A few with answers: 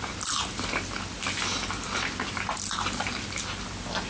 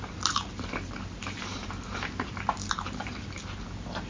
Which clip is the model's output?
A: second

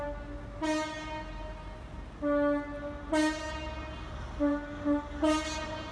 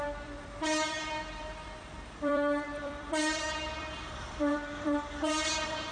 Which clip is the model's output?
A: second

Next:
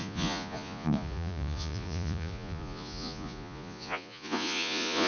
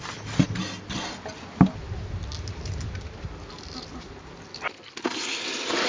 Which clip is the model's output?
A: first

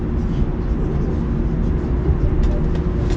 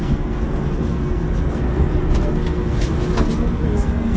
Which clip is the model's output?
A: second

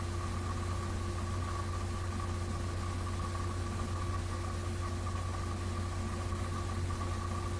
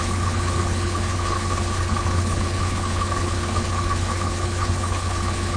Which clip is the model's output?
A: second